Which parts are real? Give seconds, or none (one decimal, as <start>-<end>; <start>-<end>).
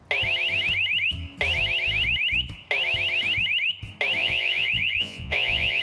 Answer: 0.0-4.2